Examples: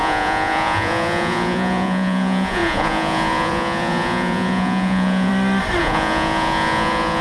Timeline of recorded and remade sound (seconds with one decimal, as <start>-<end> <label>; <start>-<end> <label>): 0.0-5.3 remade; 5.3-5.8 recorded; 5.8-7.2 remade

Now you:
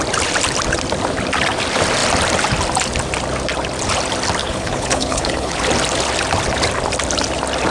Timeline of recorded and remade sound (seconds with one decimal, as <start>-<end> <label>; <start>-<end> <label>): 0.0-4.4 recorded; 4.4-5.6 remade; 5.6-7.7 recorded

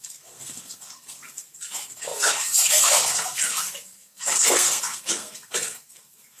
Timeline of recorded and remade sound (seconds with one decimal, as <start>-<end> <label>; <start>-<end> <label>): 0.0-6.4 remade

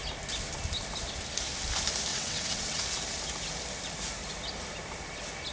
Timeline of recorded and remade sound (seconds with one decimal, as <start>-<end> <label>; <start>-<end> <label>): 0.0-2.1 recorded; 2.1-2.8 remade; 2.8-5.5 recorded

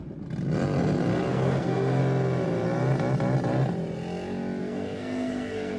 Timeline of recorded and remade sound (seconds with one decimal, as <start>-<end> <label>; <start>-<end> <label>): 0.0-1.3 recorded; 1.3-2.0 remade; 2.0-4.6 recorded; 4.6-5.8 remade

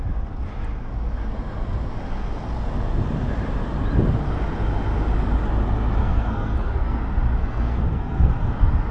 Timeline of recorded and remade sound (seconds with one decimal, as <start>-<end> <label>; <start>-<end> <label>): 0.0-6.0 recorded; 6.0-7.0 remade; 7.0-7.4 recorded; 7.4-8.3 remade; 8.3-8.9 recorded